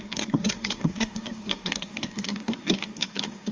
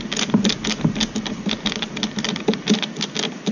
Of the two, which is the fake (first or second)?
first